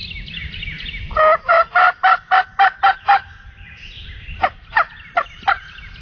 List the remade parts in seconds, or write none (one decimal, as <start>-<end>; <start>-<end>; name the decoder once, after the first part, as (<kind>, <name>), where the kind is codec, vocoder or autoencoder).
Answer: none